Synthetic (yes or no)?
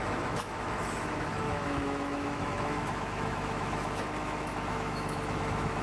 yes